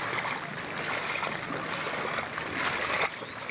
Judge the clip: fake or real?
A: real